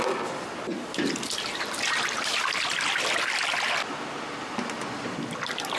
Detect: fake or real real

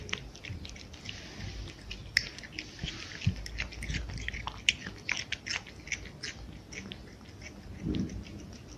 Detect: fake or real real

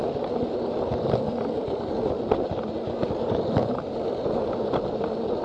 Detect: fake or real real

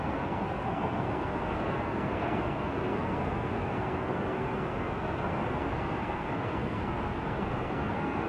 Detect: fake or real fake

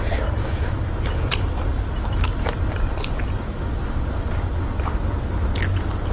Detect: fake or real real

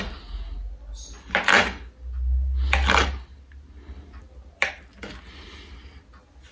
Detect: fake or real real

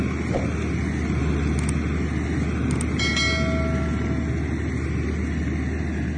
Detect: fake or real real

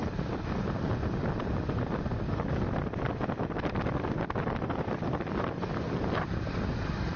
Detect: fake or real real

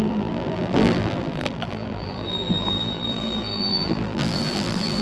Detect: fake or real fake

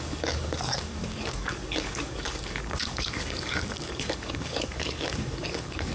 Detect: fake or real fake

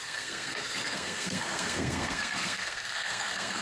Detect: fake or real fake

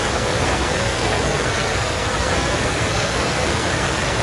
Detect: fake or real fake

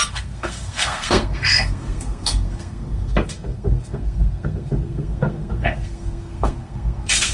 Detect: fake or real fake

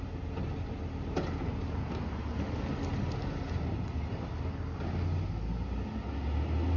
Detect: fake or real real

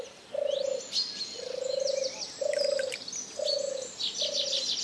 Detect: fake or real real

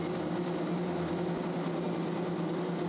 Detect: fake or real real